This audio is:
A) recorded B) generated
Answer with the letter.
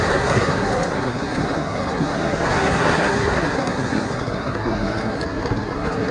B